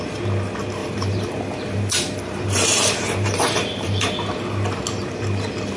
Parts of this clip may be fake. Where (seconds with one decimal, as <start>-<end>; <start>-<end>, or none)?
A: 0.8-4.3